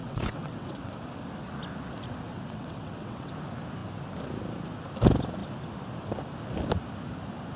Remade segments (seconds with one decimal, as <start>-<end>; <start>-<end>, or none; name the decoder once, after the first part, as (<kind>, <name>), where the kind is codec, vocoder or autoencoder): 0.0-0.9 (vocoder, WaveNeXt); 2.3-3.3